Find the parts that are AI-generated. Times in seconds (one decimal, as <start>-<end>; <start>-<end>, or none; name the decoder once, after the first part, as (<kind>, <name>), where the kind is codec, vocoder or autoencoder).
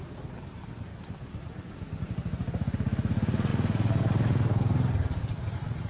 0.9-1.6 (vocoder, BigVGAN v2); 3.5-4.5